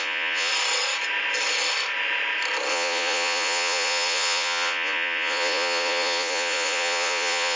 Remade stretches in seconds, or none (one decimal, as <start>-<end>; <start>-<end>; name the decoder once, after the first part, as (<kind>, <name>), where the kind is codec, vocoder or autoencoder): 0.0-0.5 (vocoder, Vocos); 2.7-7.6